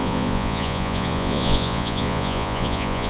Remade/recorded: remade